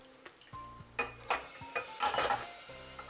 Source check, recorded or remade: recorded